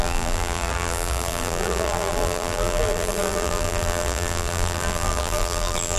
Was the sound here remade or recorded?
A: remade